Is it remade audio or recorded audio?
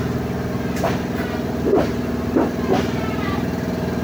recorded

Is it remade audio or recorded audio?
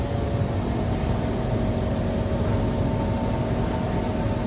recorded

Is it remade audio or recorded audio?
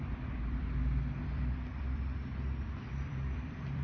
remade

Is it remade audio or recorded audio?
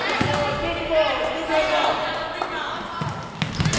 recorded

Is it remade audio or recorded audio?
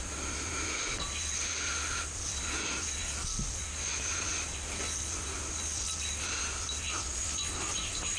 recorded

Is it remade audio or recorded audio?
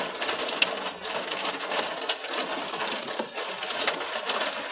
recorded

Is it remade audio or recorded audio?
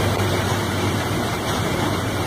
remade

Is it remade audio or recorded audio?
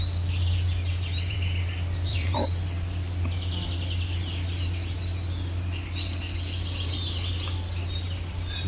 remade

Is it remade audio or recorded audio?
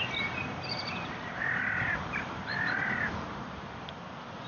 remade